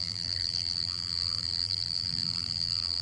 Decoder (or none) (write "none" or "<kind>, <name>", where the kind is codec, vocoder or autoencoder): vocoder, BigVGAN v2